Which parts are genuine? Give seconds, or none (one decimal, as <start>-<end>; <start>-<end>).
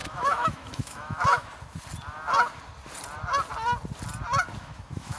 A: 1.5-4.6